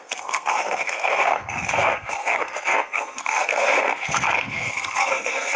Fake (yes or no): yes